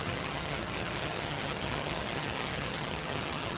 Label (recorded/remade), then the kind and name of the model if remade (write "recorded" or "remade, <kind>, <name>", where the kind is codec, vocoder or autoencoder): remade, vocoder, HiFi-GAN